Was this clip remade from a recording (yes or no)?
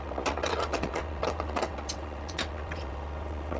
yes